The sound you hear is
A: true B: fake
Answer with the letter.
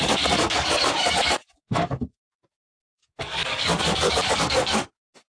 B